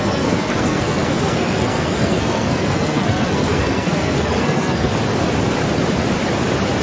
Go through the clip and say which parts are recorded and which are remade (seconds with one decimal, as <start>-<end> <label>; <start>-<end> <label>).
0.0-4.9 remade; 4.9-6.8 recorded